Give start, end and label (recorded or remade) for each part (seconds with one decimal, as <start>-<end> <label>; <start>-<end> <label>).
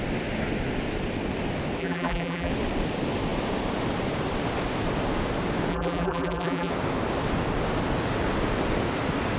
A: 0.0-1.8 recorded; 1.8-2.5 remade; 2.5-5.7 recorded; 5.7-6.7 remade; 6.7-9.4 recorded